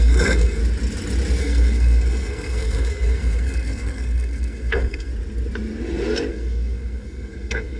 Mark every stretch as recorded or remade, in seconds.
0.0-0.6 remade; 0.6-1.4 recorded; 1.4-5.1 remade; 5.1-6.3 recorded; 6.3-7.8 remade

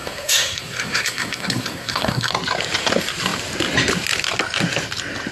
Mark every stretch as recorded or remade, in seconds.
0.0-2.3 remade; 2.3-5.3 recorded

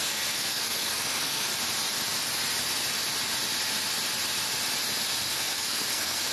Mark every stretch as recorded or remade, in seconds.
0.0-1.5 remade; 1.5-5.3 recorded; 5.3-6.3 remade

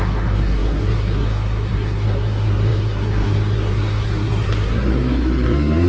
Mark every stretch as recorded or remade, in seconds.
0.0-5.9 remade

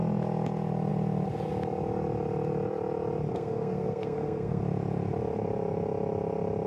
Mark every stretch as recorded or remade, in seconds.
0.0-3.3 recorded; 3.3-4.6 remade; 4.6-6.7 recorded

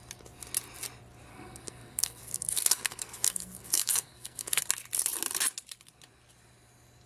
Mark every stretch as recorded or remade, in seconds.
0.0-1.3 recorded; 1.3-4.6 remade; 4.6-7.1 recorded